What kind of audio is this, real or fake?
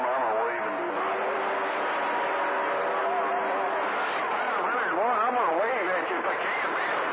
real